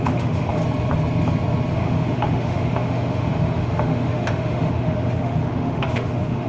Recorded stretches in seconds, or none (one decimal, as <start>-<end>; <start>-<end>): 0.6-1.7